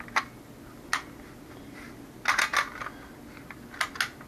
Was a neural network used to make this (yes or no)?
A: no